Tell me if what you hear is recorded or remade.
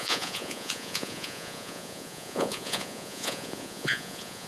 remade